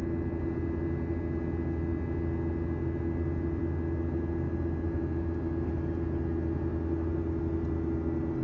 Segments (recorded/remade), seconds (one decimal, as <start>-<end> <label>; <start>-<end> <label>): 0.0-8.4 recorded